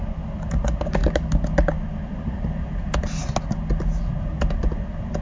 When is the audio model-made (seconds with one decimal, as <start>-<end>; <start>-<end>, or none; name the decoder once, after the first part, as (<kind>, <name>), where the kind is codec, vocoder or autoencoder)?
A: none